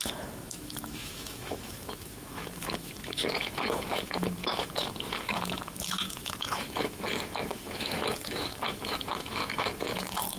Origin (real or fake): fake